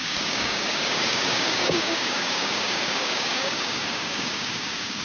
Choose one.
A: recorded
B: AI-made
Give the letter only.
B